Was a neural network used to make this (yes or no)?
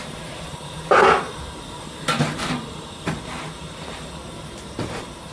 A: yes